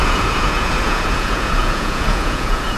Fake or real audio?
fake